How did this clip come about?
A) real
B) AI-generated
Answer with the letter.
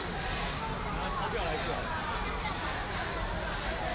A